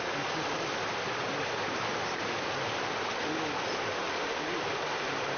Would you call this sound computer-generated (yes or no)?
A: no